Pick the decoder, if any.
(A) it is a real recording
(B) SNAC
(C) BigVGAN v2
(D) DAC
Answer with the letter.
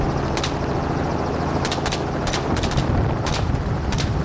A